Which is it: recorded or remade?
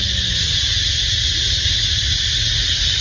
recorded